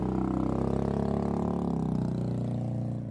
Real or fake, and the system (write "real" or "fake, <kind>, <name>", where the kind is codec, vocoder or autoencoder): real